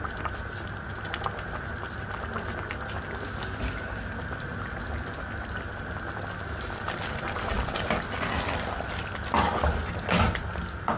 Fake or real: real